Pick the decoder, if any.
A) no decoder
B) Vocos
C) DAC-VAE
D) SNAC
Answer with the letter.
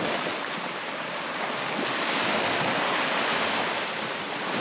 A